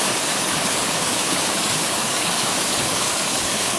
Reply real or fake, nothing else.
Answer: fake